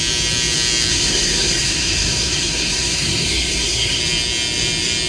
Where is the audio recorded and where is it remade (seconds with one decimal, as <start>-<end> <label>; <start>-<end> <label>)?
0.0-0.9 recorded; 0.9-4.0 remade; 4.0-5.1 recorded